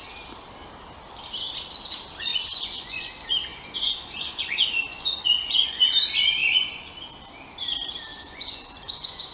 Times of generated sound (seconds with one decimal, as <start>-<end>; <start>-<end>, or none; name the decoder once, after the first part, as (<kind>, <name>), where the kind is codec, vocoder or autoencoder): 2.3-3.1 (vocoder, Vocos); 3.5-5.8; 6.4-6.9; 8.1-9.3